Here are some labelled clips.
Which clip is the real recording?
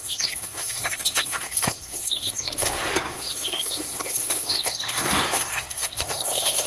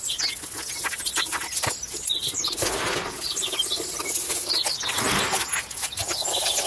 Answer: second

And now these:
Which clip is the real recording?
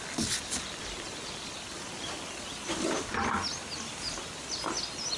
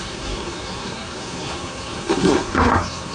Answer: first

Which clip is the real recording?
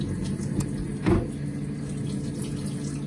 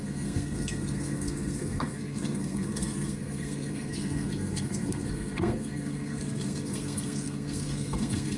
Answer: first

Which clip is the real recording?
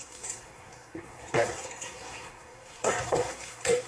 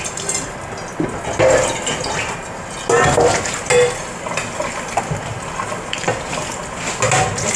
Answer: second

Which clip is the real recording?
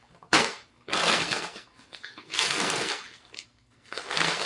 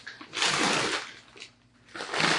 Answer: second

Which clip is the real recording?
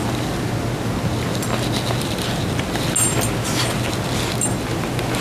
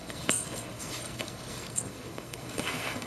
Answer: first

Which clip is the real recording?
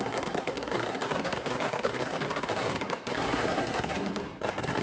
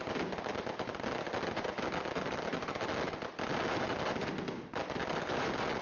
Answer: second